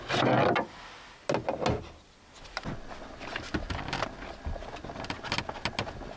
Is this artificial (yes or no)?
no